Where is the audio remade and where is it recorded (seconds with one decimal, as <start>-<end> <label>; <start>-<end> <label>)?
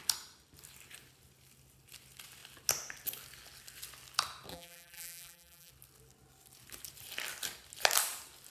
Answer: 0.0-4.5 recorded; 4.5-5.7 remade; 5.7-8.5 recorded